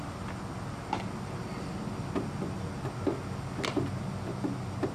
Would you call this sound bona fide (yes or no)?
yes